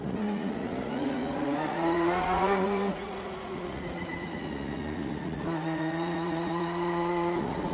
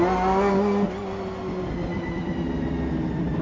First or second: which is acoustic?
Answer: second